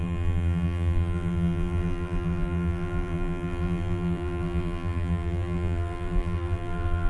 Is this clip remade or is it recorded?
remade